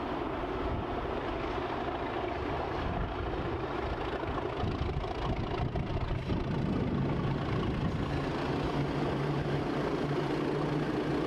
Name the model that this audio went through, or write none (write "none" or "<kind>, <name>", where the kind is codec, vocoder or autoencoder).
none